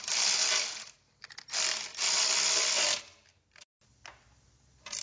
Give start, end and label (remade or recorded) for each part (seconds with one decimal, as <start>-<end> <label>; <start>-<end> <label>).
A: 0.0-5.0 recorded